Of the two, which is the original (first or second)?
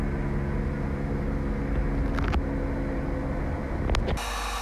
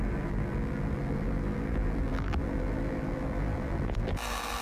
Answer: first